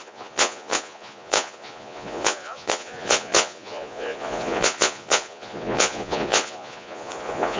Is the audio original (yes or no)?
no